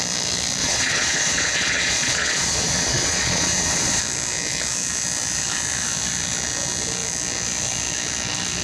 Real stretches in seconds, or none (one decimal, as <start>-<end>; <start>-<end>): 0.0-0.6; 4.0-8.6